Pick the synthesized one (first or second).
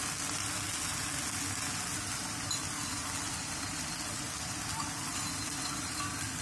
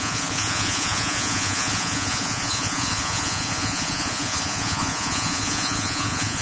second